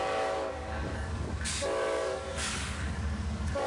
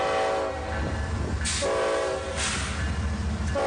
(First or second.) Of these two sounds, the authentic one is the second